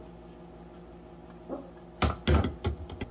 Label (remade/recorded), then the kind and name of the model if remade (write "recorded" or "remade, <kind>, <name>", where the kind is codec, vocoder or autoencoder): recorded